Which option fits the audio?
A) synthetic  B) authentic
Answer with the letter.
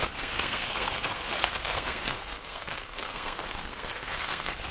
A